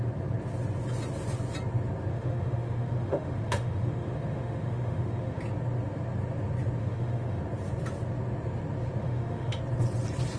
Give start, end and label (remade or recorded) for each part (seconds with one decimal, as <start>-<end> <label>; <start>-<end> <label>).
0.0-2.1 recorded; 2.1-5.4 remade; 5.4-6.8 recorded; 6.8-7.4 remade; 7.4-9.0 recorded; 9.0-9.6 remade; 9.6-10.4 recorded

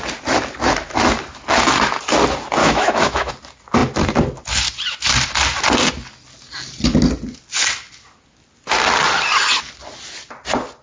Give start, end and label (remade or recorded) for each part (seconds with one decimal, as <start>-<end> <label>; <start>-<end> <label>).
0.0-2.6 recorded; 2.6-3.3 remade; 3.3-10.8 recorded